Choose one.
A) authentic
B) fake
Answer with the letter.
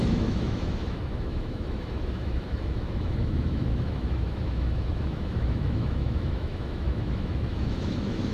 B